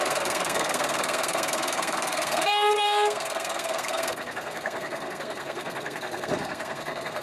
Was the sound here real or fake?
fake